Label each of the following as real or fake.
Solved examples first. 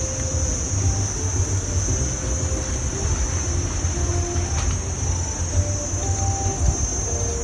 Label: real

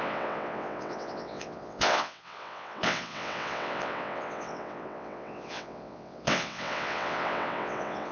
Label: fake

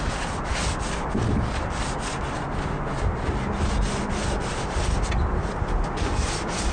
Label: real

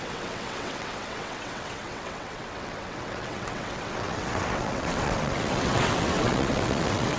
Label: fake